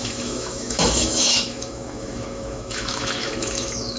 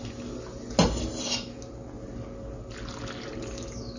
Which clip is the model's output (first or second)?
first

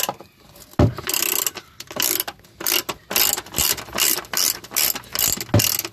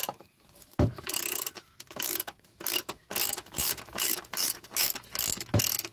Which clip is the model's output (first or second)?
second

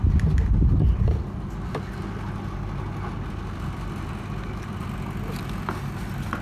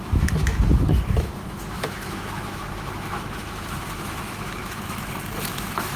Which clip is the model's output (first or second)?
second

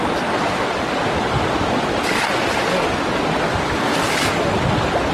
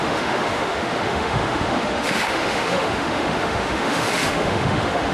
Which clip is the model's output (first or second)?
second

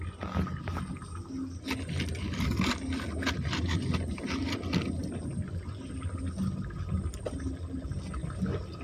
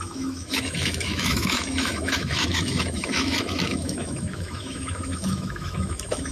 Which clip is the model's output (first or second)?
second